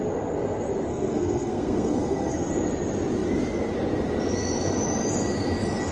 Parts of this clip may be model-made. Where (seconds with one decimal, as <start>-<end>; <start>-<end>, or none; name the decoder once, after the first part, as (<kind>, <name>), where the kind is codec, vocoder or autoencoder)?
0.9-2.5 (codec, SNAC)